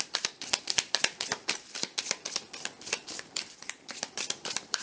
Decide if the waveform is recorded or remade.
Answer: remade